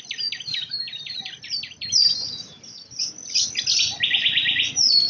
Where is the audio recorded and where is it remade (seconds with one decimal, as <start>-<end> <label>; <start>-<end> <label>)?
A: 0.0-0.5 recorded; 0.5-3.0 remade; 3.0-5.1 recorded